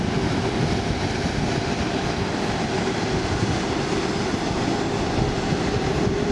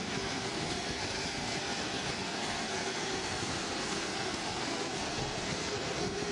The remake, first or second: second